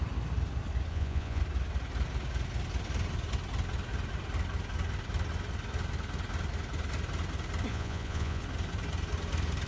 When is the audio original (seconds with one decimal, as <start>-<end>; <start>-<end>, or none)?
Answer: 0.0-0.9; 1.4-7.7; 8.4-9.7